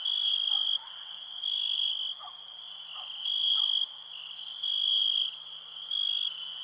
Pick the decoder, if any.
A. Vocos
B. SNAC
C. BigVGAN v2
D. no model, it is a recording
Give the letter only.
D